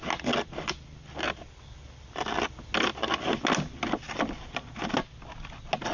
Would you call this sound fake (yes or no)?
no